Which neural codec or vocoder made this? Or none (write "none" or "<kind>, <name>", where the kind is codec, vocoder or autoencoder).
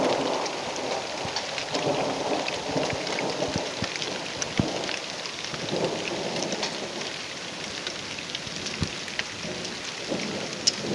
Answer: none